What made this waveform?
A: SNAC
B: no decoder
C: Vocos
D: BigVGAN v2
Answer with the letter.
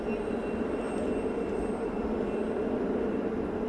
B